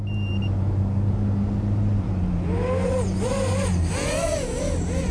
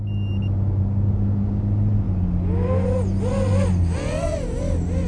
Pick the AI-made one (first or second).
first